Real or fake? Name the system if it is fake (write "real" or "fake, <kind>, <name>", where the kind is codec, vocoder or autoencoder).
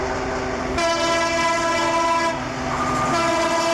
real